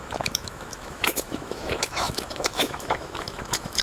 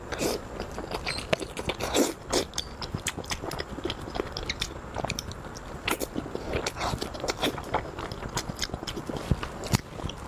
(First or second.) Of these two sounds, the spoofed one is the first